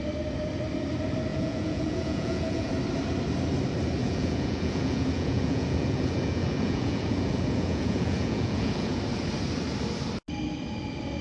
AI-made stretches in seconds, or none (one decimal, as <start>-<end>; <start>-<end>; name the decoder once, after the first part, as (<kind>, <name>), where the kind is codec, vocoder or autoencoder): 1.3-2.7 (vocoder, Vocos); 4.0-9.0